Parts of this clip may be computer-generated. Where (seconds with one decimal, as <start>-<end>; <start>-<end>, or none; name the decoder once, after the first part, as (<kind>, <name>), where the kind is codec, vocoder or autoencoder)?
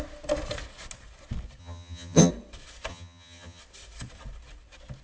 1.6-2.3 (vocoder, HiFi-GAN); 2.9-3.6